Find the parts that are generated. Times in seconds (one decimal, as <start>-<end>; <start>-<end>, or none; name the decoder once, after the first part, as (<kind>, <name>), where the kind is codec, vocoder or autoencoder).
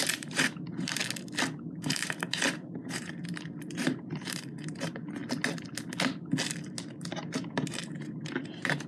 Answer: 0.0-1.0 (vocoder, BigVGAN v2); 1.7-5.2; 7.8-8.9